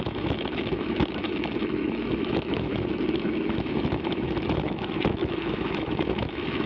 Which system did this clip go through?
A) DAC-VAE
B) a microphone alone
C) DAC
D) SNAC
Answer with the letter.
A